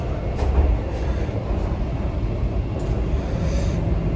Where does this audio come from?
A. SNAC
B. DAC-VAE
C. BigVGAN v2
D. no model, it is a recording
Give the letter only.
D